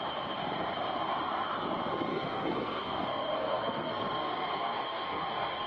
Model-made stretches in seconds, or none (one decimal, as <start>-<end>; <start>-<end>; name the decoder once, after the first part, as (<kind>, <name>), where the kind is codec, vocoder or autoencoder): 2.1-5.7 (codec, SNAC)